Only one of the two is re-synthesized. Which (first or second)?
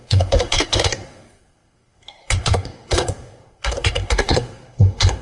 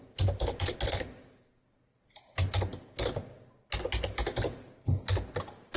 first